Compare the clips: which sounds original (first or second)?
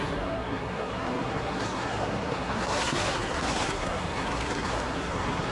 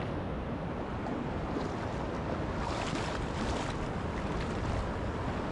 second